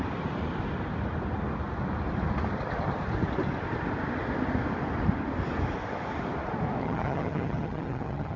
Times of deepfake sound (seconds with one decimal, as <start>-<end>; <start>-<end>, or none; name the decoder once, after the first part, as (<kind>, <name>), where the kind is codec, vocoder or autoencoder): 6.8-8.4 (vocoder, HiFi-GAN)